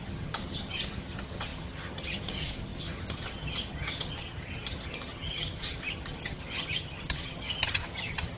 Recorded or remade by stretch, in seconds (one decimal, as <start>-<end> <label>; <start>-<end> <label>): 0.0-8.4 remade